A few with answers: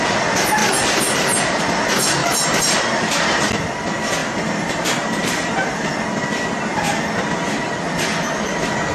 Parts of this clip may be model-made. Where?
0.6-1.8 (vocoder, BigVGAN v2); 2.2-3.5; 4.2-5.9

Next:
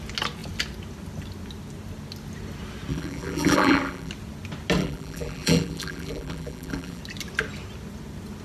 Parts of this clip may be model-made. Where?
2.9-4.1 (vocoder, BigVGAN v2); 4.8-7.0

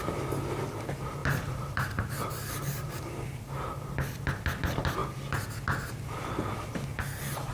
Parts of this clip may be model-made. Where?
1.2-3.8 (vocoder, BigVGAN v2)